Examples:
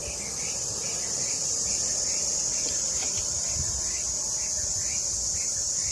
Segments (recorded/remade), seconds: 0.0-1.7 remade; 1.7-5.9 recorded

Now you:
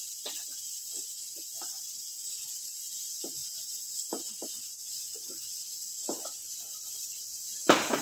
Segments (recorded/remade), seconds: 0.0-8.0 recorded

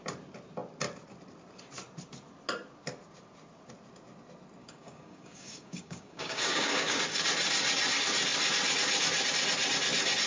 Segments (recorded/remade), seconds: 0.0-4.6 recorded; 4.6-7.0 remade; 7.0-10.3 recorded

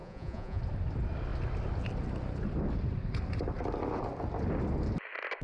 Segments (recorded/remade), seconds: 0.0-0.6 remade; 0.6-5.4 recorded

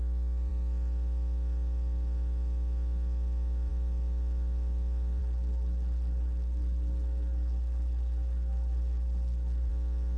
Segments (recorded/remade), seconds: 0.0-5.2 recorded; 5.2-9.7 remade; 9.7-10.2 recorded

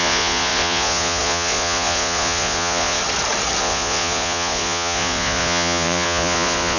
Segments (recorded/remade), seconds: 0.0-3.0 remade; 3.0-3.6 recorded; 3.6-6.8 remade